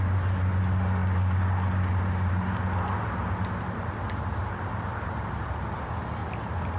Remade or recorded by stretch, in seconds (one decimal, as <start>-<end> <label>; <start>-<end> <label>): 0.0-6.8 recorded